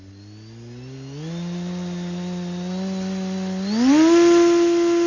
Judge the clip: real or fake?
real